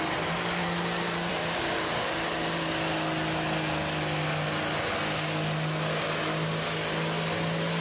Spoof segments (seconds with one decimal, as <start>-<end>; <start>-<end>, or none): 0.6-2.7